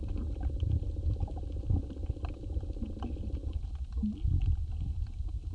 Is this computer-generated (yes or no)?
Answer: no